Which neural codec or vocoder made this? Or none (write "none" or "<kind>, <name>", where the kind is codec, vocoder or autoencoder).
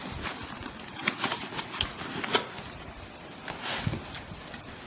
none